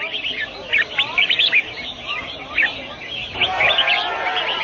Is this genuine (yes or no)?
yes